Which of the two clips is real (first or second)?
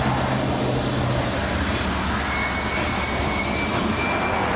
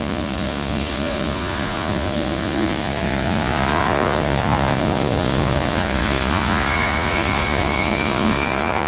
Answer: first